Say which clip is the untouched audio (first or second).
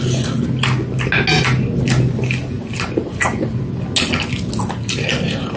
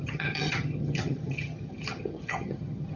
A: first